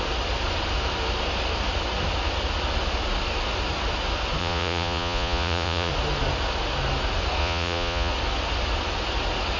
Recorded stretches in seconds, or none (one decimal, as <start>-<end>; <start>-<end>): 0.0-4.4; 5.9-7.4; 8.1-9.6